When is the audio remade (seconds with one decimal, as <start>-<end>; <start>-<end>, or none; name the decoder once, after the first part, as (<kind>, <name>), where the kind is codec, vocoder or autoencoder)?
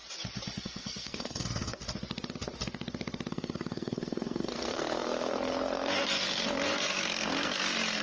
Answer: 0.6-1.8 (codec, SNAC); 3.3-8.0